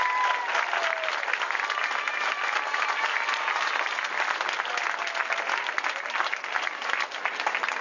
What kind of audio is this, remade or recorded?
recorded